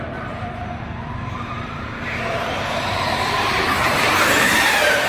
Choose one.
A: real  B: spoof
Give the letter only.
B